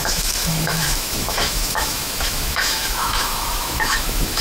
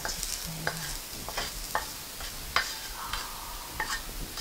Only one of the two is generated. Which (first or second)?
first